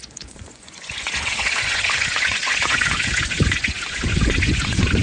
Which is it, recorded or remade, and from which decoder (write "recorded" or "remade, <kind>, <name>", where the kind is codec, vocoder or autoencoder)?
remade, vocoder, Vocos